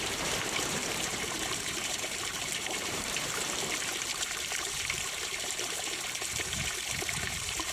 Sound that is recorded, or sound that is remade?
remade